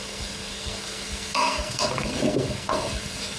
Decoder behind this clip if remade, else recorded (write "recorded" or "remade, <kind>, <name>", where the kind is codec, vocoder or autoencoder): remade, codec, SNAC